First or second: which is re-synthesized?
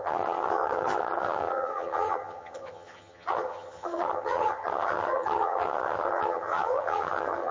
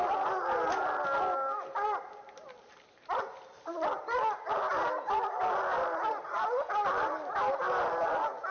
first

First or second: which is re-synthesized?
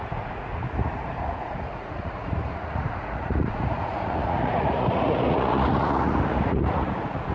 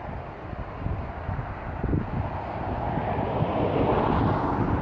first